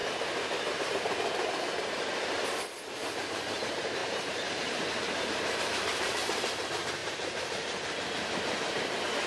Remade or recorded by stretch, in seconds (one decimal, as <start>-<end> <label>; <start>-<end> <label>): 0.0-4.0 recorded; 4.0-6.6 remade; 6.6-7.0 recorded; 7.0-9.3 remade